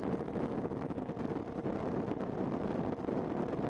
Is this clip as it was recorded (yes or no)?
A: yes